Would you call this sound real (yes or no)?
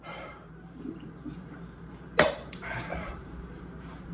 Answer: no